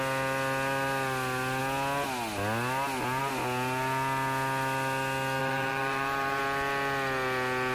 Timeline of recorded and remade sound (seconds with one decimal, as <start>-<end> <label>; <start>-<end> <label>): 0.0-5.4 recorded; 5.4-6.4 remade; 6.4-7.7 recorded